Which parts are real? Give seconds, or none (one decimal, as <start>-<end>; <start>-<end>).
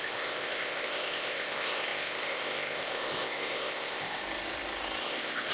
4.2-5.0